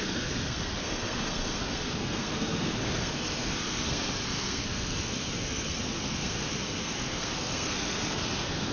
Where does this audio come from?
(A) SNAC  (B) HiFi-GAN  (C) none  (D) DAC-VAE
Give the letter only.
A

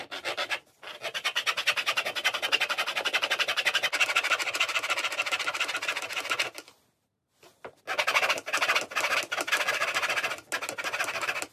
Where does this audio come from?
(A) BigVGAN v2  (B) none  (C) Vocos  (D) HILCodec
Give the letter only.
B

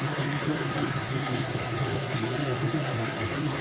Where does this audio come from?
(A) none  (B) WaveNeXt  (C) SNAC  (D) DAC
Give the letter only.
C